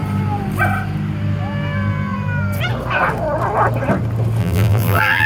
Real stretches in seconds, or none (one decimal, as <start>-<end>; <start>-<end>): 0.0-4.4